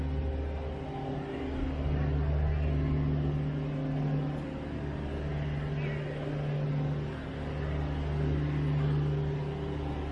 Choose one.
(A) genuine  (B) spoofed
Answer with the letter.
A